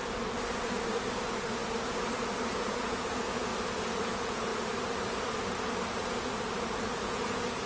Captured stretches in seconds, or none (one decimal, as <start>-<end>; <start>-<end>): 0.0-2.5; 3.5-4.1; 4.5-6.8